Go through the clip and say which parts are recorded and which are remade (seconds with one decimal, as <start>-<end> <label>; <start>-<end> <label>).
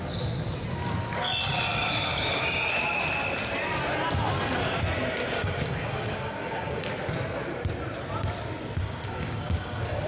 0.0-5.3 recorded; 5.3-6.9 remade; 6.9-8.8 recorded; 8.8-10.1 remade